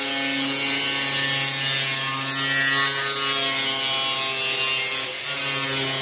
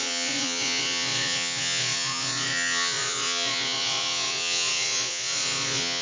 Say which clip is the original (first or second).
first